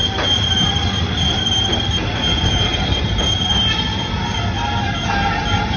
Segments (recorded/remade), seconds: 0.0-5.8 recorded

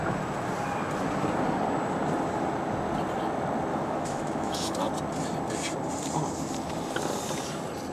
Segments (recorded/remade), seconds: 0.0-3.7 recorded; 3.7-4.8 remade; 4.8-7.9 recorded

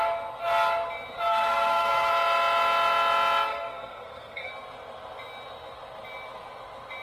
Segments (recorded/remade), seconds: 0.0-1.3 recorded; 1.3-2.1 remade; 2.1-3.5 recorded; 3.5-4.5 remade; 4.5-7.0 recorded

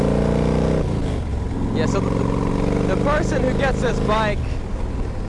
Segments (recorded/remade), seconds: 0.0-5.3 recorded

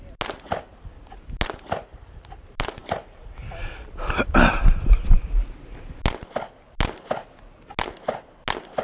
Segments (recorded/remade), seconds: 0.0-8.8 recorded

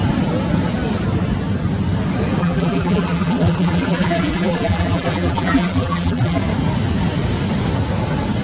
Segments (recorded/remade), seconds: 0.0-2.4 recorded; 2.4-6.4 remade; 6.4-8.4 recorded